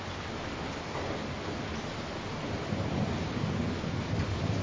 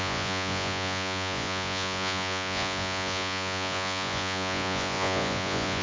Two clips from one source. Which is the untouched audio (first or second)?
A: first